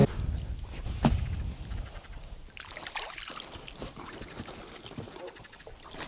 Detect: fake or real real